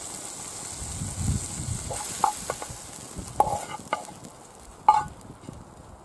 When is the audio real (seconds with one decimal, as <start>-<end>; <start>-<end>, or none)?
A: 0.0-6.0